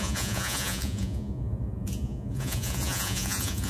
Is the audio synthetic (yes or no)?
yes